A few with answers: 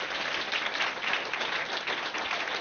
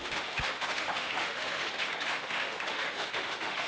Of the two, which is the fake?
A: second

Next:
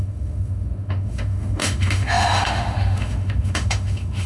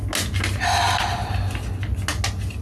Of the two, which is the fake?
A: first